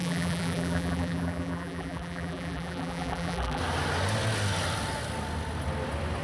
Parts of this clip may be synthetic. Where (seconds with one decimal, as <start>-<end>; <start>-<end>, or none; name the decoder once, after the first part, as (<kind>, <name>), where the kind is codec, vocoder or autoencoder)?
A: 0.0-3.6 (vocoder, BigVGAN v2)